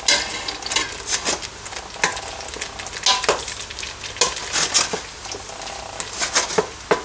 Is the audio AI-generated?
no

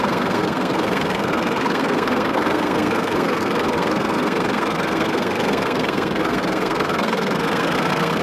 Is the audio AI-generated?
yes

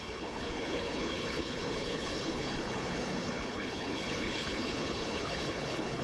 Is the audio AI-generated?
yes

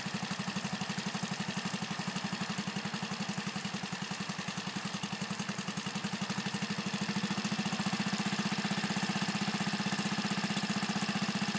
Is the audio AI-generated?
no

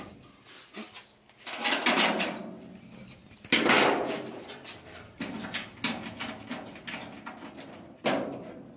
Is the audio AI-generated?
no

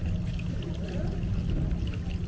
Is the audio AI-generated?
no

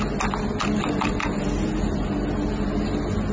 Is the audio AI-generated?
no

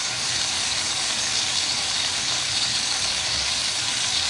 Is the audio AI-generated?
yes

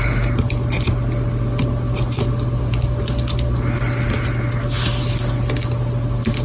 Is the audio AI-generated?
no